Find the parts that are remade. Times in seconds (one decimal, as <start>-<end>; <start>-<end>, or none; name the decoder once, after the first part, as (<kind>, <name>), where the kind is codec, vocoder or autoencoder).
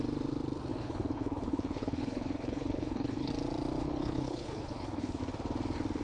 0.7-3.3 (codec, HILCodec); 3.8-5.2